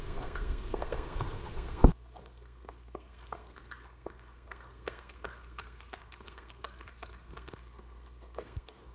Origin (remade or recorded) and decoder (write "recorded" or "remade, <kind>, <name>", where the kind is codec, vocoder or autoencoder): remade, codec, SNAC